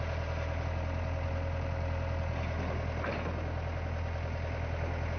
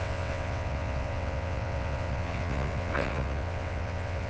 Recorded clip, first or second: first